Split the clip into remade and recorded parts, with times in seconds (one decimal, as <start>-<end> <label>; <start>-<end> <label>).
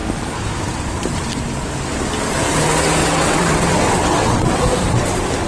0.0-3.0 recorded; 3.0-4.6 remade; 4.6-5.5 recorded